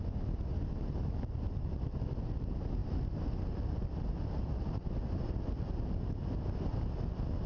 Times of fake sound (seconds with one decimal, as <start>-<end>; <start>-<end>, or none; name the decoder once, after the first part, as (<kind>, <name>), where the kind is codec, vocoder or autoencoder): none